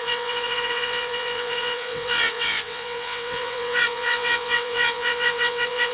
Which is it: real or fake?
fake